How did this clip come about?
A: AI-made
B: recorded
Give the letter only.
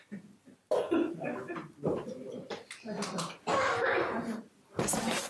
B